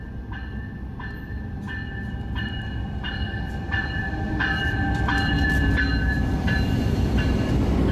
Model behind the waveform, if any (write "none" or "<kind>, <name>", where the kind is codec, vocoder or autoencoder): vocoder, BigVGAN v2